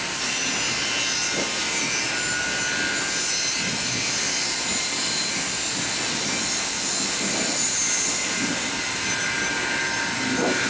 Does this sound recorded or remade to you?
recorded